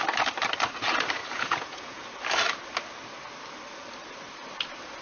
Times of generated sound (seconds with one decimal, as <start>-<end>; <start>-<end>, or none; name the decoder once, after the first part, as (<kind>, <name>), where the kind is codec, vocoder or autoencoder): 1.2-2.0 (vocoder, Vocos)